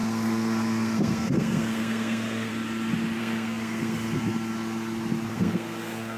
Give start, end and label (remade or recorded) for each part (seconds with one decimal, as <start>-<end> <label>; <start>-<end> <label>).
0.0-2.5 remade; 2.5-3.2 recorded; 3.2-4.2 remade; 4.2-5.3 recorded; 5.3-6.2 remade